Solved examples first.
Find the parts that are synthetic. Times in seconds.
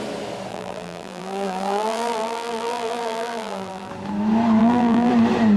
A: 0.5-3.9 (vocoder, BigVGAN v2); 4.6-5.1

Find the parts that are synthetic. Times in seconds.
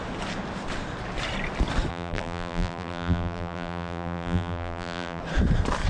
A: 1.9-5.2 (vocoder, BigVGAN v2)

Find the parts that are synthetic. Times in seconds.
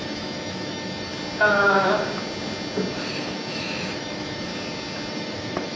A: 0.0-1.1 (autoencoder, DAC-VAE); 3.1-4.5; 5.1-5.8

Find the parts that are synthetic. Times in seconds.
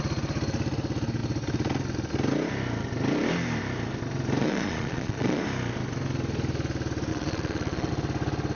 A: 4.4-5.4 (vocoder, Vocos); 7.1-7.9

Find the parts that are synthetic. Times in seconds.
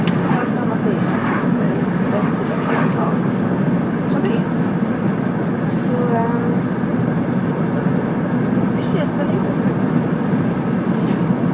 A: 1.2-2.6 (vocoder, BigVGAN v2); 6.9-7.9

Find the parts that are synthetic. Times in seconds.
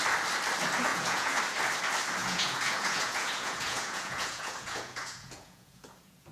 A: 0.9-1.4 (vocoder, Vocos); 2.2-6.3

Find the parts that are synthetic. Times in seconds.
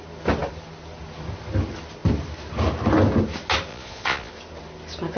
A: 3.7-4.3 (vocoder, Vocos)